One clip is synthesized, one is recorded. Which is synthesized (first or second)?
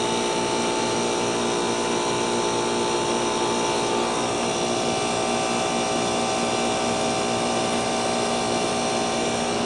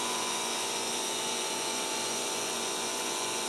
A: second